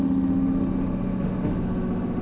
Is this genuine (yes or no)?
no